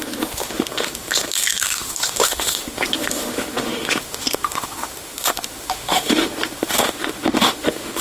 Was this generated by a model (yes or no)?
yes